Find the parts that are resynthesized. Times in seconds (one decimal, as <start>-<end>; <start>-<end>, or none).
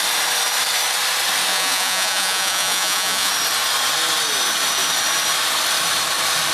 1.5-3.3